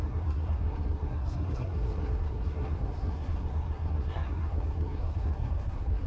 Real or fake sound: fake